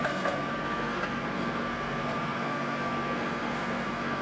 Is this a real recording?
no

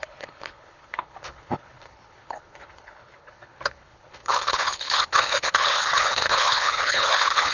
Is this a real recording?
no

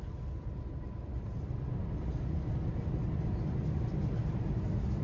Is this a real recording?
yes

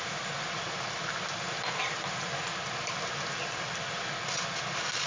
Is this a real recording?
yes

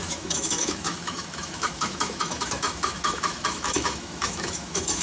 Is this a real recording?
no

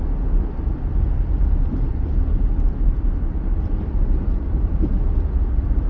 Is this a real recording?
no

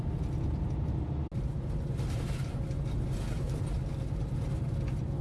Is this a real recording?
yes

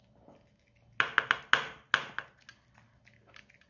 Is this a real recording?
yes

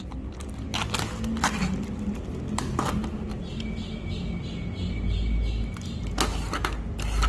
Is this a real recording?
yes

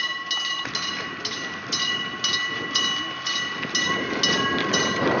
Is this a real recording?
yes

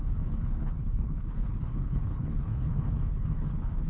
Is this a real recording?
no